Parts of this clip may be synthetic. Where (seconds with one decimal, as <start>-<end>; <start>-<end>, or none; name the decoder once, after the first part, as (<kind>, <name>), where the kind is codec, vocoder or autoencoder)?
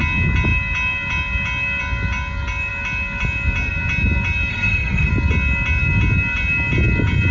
4.5-5.1 (codec, SNAC)